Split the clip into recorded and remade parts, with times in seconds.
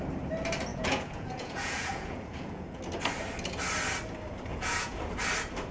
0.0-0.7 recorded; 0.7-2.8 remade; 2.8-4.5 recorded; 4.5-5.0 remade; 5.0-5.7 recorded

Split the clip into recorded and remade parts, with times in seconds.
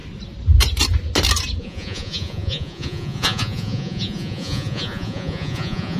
0.0-1.6 recorded; 1.6-6.0 remade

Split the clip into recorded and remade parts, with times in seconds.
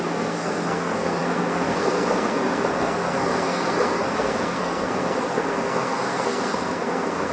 0.0-7.3 remade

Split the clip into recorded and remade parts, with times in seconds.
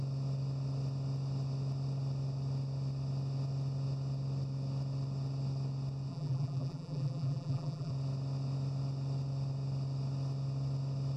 0.0-6.1 recorded; 6.1-7.9 remade; 7.9-11.2 recorded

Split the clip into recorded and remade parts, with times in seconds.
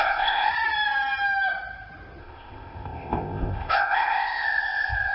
0.0-0.5 remade; 0.5-2.2 recorded; 2.2-5.1 remade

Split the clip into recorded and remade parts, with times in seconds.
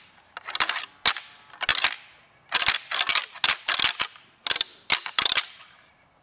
0.0-6.2 recorded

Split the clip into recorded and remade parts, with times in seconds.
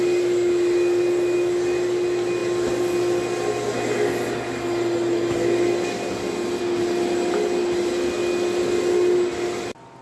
0.0-10.0 recorded